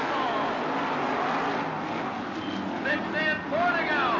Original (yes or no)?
yes